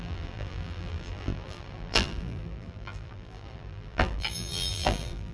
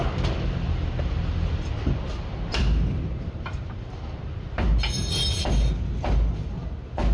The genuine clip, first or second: second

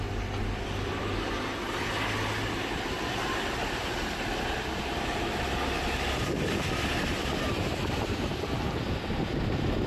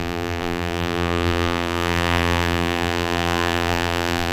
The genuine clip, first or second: first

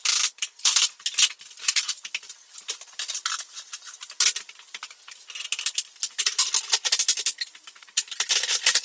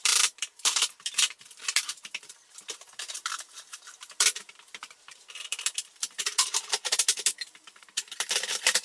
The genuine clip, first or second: first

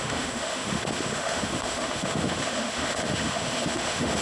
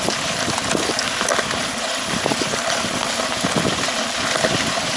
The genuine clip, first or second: second